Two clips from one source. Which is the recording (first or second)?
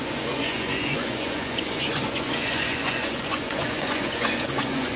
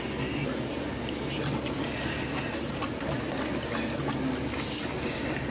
second